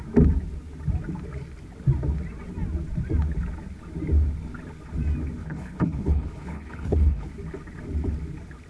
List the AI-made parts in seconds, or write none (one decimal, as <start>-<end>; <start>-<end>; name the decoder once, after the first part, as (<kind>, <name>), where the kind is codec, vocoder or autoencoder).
5.4-7.3 (codec, HILCodec)